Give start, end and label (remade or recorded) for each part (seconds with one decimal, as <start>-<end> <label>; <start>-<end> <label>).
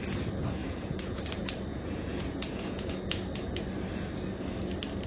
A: 0.0-0.6 recorded; 0.6-1.2 remade; 1.2-1.7 recorded; 1.7-3.1 remade; 3.1-5.1 recorded